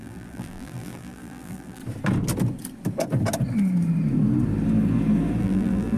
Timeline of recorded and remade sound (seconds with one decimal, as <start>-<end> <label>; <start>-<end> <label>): 0.0-1.8 remade; 1.8-5.4 recorded; 5.4-6.0 remade